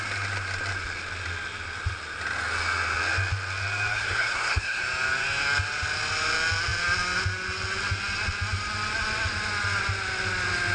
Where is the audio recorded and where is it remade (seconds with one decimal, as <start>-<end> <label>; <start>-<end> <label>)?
0.0-3.9 recorded; 3.9-4.8 remade; 4.8-10.7 recorded